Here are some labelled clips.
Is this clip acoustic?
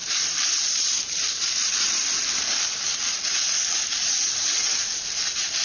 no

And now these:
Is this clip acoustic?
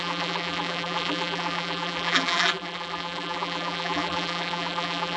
no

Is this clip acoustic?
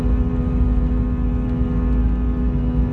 yes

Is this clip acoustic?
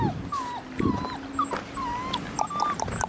yes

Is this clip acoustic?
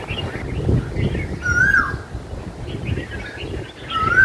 yes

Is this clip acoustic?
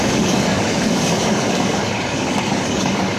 no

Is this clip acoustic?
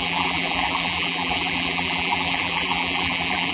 no